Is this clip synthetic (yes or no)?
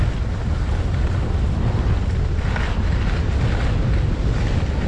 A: no